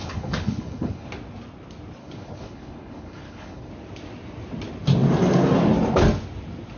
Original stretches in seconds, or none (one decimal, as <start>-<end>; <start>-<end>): 1.1-2.0; 3.7-6.8